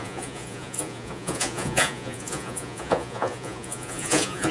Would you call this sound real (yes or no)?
no